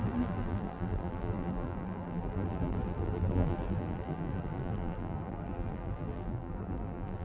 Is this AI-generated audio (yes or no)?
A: yes